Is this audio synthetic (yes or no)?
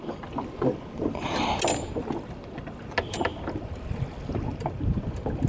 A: no